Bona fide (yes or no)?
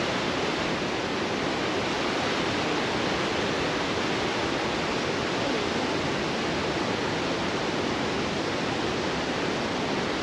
yes